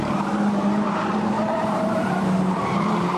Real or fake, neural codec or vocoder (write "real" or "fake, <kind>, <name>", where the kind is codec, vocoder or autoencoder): fake, vocoder, BigVGAN v2